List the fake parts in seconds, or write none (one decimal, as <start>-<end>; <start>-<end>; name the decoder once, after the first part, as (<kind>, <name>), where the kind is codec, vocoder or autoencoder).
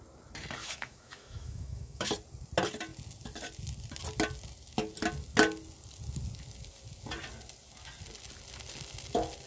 0.6-2.1 (autoencoder, DAC-VAE)